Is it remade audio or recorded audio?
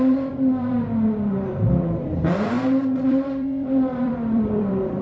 remade